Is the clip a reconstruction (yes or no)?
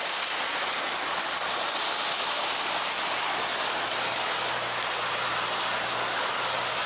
no